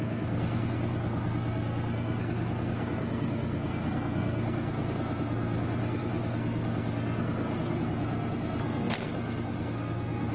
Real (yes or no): no